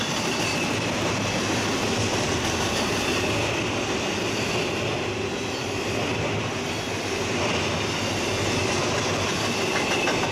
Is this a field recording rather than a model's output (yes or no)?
yes